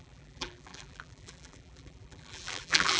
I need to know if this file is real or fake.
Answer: fake